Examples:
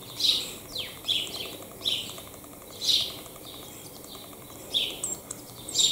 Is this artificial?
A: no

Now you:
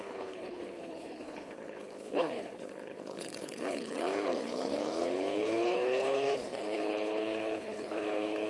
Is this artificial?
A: yes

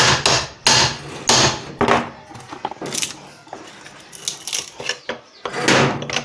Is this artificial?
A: no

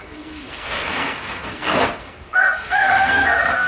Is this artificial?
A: yes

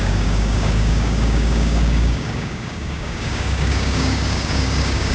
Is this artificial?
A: yes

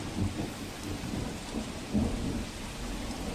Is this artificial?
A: no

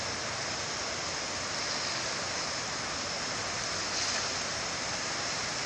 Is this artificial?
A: no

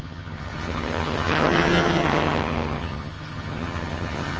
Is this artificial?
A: yes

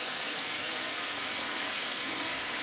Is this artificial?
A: yes